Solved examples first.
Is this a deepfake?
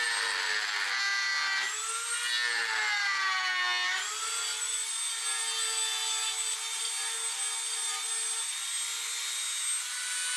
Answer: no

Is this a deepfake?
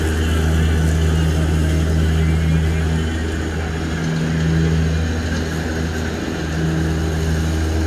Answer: no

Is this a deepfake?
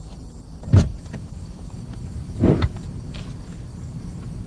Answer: no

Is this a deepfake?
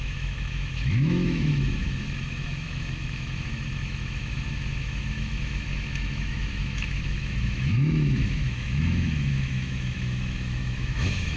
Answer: yes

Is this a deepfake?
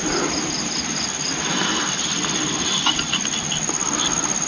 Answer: no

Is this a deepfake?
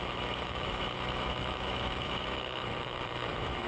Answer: yes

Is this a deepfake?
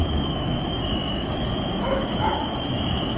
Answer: yes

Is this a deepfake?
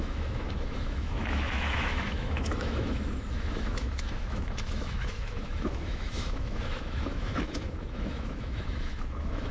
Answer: yes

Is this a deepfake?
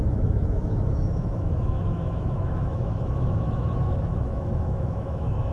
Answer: yes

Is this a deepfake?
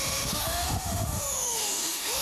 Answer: yes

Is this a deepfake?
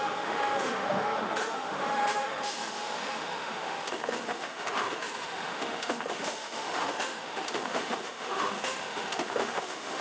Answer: yes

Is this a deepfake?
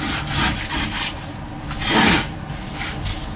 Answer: no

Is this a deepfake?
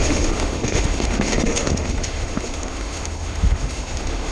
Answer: yes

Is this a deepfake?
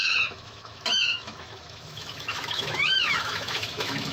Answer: yes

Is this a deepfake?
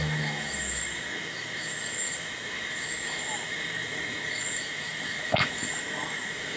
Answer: yes